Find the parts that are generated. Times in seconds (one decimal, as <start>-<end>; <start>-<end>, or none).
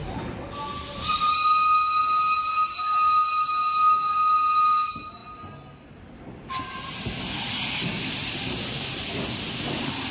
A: none